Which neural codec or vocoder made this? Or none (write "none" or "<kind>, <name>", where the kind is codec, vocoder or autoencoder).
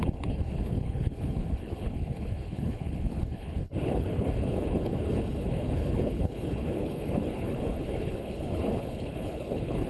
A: codec, HILCodec